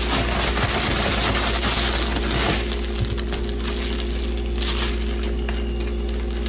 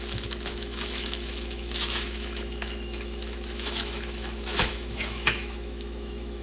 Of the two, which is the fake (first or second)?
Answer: second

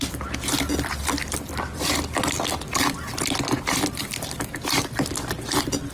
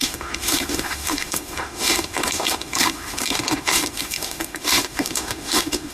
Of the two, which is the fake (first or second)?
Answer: second